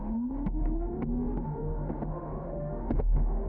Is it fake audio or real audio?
fake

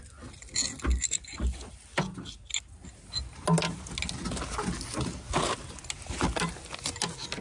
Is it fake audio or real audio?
real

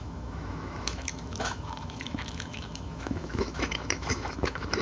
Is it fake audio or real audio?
fake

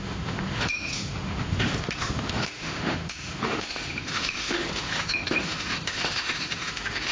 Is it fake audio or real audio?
fake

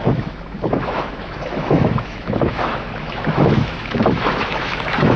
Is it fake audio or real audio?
fake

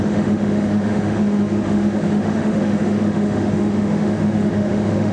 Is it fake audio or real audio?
fake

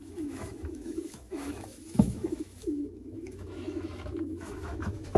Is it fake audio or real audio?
fake